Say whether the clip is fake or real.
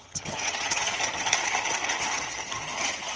fake